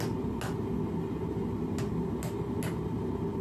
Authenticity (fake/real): real